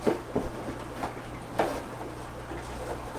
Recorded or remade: recorded